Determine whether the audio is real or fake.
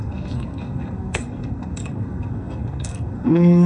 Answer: fake